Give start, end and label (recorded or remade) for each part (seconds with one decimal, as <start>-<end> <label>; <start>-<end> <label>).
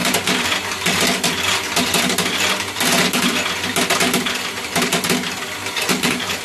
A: 0.0-5.6 recorded; 5.6-6.4 remade